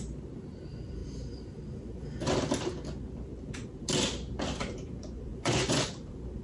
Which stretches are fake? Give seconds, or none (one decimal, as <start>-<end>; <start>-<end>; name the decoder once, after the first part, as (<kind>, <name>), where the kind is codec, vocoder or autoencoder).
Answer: 5.3-5.9 (vocoder, Vocos)